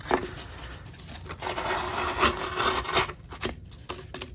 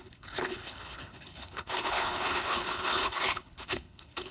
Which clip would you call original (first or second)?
first